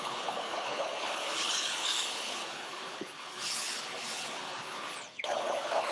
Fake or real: fake